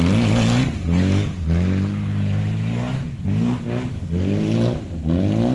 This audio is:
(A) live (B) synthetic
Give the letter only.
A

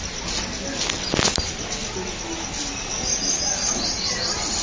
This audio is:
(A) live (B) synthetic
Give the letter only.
A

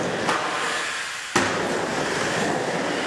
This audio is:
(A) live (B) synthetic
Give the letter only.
A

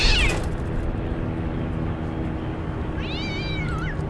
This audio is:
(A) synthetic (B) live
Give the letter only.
B